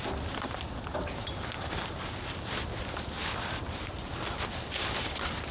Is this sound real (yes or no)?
yes